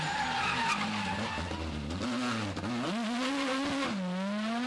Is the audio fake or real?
real